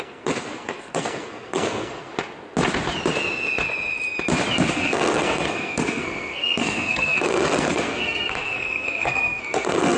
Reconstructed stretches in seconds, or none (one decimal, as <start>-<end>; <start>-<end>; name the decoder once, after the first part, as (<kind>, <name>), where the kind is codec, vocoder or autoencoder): 0.0-2.1 (codec, SNAC); 4.7-10.0